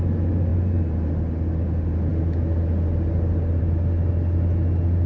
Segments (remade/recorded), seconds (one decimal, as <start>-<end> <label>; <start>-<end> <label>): 0.0-5.1 recorded